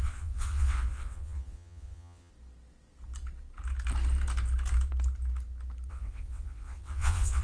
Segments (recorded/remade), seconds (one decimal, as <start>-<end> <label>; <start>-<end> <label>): 0.0-2.3 remade; 2.3-5.9 recorded; 5.9-7.4 remade